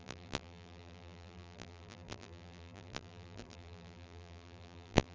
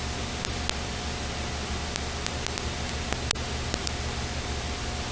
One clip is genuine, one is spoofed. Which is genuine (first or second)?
second